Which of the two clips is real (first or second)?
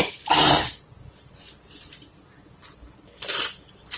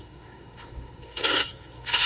first